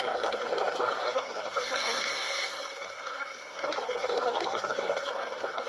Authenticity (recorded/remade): remade